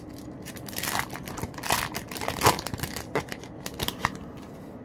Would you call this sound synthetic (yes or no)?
no